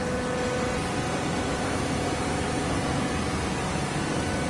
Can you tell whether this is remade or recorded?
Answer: recorded